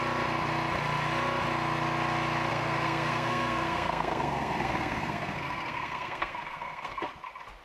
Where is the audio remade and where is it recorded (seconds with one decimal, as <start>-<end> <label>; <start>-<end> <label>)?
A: 0.0-2.5 recorded; 2.5-7.1 remade; 7.1-7.6 recorded